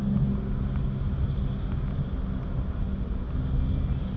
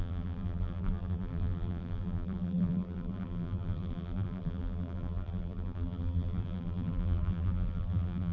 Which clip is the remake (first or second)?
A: second